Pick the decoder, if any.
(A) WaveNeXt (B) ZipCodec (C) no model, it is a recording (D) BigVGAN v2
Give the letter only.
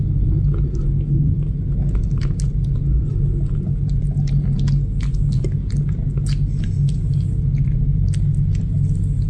C